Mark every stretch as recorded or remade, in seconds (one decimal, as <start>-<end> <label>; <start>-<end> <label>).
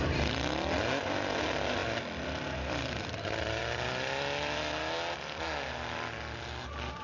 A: 0.0-1.8 recorded; 1.8-3.6 remade; 3.6-7.0 recorded